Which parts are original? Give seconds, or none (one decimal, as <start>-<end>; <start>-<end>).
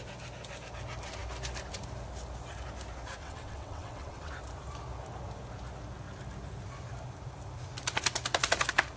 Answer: 0.0-3.2; 4.3-9.0